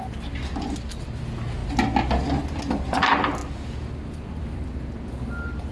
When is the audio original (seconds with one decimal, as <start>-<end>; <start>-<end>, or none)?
0.0-5.7